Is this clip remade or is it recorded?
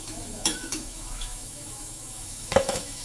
remade